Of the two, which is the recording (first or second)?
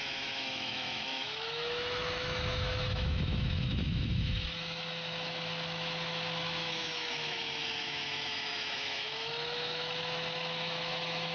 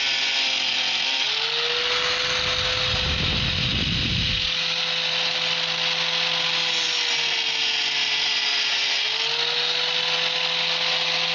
second